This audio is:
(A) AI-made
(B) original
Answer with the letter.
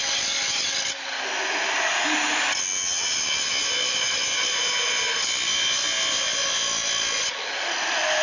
B